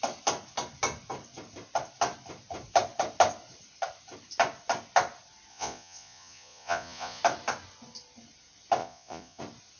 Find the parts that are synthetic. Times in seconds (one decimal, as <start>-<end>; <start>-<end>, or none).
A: 5.5-7.2; 8.8-9.4